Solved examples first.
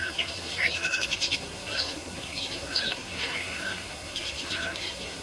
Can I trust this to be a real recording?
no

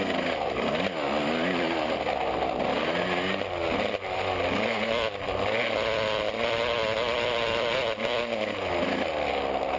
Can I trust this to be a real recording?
yes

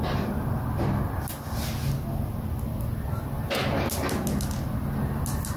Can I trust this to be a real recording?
yes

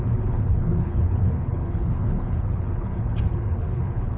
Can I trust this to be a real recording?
no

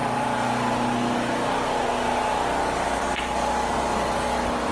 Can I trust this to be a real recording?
yes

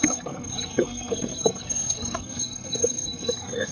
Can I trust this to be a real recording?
no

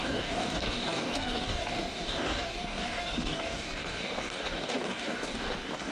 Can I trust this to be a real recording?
no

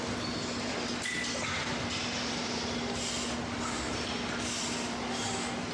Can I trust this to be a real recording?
yes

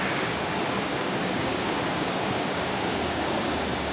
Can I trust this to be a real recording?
no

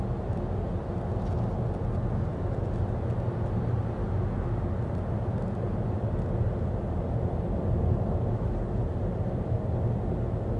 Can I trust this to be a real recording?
yes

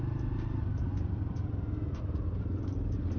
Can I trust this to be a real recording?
yes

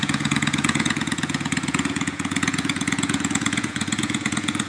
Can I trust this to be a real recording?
no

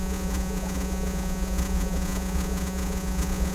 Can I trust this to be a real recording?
no